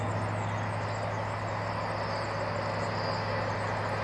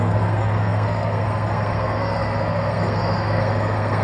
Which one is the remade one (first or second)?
second